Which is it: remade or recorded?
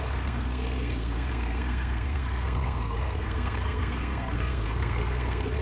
remade